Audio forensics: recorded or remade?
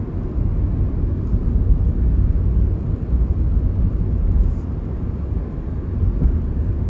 recorded